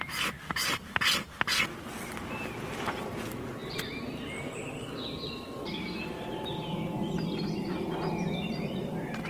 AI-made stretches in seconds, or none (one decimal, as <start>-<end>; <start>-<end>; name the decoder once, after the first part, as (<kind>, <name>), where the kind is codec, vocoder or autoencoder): none